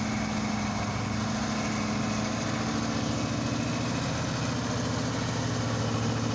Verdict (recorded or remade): recorded